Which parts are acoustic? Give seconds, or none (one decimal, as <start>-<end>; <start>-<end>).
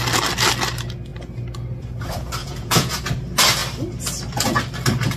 0.0-2.4; 3.0-5.2